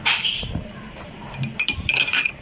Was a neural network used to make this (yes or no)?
yes